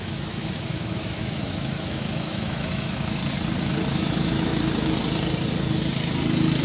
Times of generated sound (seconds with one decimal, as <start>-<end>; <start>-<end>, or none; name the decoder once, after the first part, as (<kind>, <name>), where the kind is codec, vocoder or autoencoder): 0.0-3.2 (autoencoder, DAC-VAE); 3.9-4.5